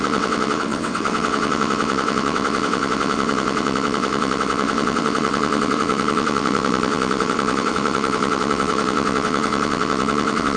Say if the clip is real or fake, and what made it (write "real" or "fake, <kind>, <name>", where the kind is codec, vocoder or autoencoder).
fake, vocoder, WaveNeXt